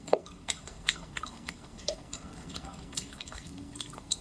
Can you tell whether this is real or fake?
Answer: fake